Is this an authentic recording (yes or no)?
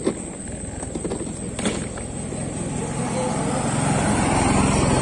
yes